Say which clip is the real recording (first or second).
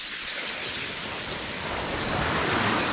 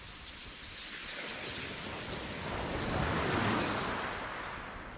second